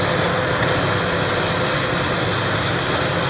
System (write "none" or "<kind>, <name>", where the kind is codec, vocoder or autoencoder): none